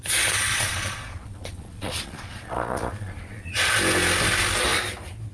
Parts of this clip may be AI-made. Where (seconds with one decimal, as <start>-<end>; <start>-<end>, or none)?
0.5-3.7